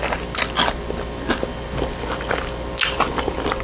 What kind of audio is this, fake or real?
real